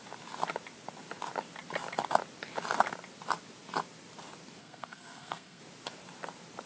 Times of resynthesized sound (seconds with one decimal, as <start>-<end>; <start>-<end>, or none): 4.6-5.6